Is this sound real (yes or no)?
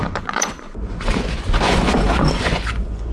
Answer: no